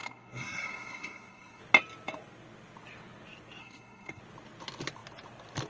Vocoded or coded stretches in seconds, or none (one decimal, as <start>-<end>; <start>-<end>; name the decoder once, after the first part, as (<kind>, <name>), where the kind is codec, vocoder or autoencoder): 0.0-1.6 (codec, SNAC); 3.6-4.2